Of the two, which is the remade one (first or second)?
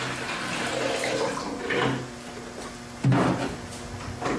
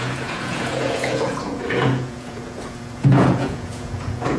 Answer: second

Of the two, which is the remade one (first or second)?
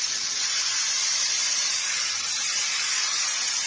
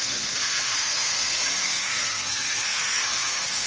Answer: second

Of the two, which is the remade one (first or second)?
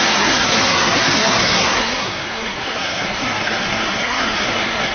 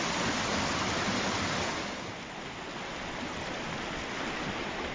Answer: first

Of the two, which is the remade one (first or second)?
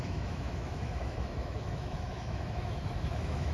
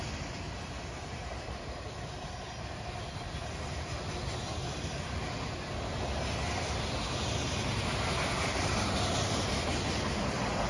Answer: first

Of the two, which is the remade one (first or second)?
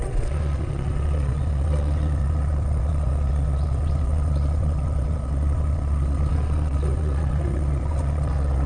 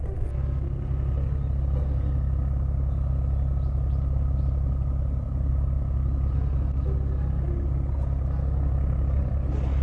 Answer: first